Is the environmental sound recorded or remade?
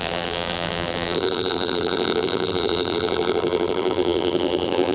remade